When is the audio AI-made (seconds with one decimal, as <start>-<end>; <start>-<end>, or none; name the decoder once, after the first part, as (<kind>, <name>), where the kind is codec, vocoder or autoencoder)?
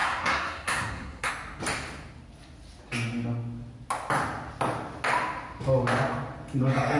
0.0-1.3 (codec, SNAC)